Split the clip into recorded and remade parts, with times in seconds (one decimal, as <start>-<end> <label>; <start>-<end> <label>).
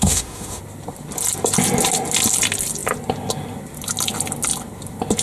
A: 0.0-0.6 remade; 0.6-5.2 recorded